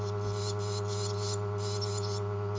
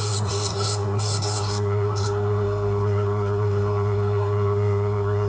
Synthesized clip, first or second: second